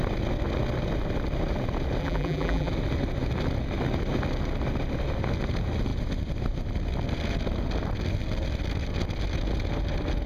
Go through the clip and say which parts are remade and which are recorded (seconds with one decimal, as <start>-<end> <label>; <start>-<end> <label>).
0.0-2.0 recorded; 2.0-2.7 remade; 2.7-10.3 recorded